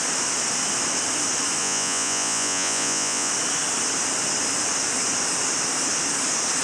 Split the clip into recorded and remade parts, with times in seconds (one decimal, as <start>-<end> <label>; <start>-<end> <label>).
0.0-1.6 recorded; 1.6-3.3 remade; 3.3-6.6 recorded